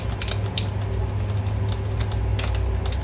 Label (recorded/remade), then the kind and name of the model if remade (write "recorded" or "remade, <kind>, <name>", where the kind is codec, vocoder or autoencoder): recorded